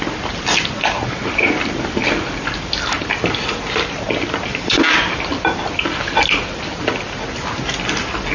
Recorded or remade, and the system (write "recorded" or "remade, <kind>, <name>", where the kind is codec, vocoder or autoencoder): recorded